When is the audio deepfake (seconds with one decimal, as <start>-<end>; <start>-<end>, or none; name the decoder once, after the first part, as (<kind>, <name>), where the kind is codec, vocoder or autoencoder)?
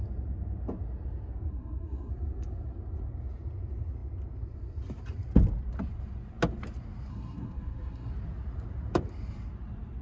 1.5-2.1 (codec, SNAC); 7.1-8.1